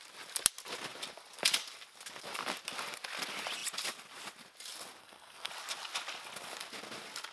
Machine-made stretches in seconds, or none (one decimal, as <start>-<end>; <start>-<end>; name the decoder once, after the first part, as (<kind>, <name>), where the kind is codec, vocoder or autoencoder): 5.0-5.5 (codec, SNAC)